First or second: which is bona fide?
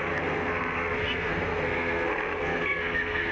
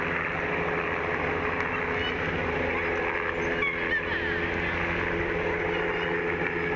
second